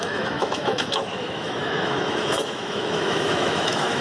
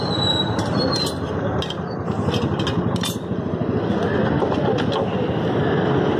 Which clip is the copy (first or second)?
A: first